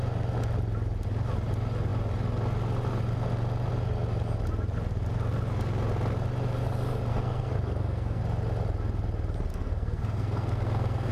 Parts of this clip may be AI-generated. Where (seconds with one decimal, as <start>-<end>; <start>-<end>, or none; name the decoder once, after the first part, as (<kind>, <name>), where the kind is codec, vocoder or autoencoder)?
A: 7.1-8.2 (codec, SNAC); 9.5-11.1